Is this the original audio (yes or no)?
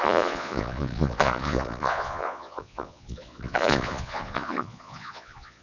no